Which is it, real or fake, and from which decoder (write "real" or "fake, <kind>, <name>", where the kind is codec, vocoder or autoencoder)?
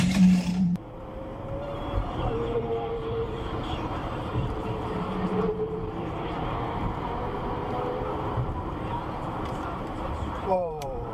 fake, vocoder, BigVGAN v2